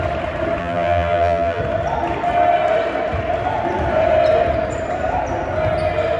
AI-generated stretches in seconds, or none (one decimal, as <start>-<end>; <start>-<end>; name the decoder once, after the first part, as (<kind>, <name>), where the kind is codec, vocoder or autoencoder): 0.6-1.6 (vocoder, BigVGAN v2)